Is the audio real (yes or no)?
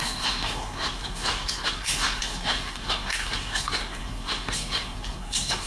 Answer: no